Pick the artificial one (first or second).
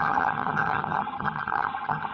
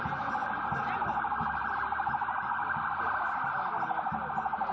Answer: first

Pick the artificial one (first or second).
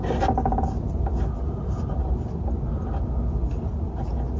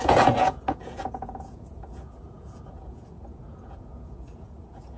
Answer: second